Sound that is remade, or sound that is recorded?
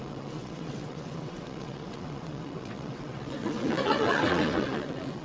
remade